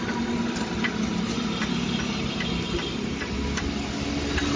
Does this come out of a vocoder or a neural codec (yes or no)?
no